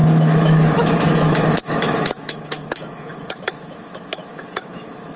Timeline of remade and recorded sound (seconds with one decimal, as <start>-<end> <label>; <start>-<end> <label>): 0.0-5.2 remade